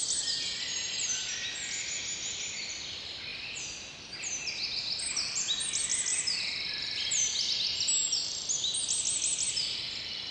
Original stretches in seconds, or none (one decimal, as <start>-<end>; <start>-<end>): 0.0-3.3; 4.2-6.1; 7.5-10.3